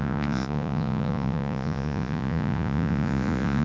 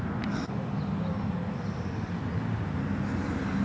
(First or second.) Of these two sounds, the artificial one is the first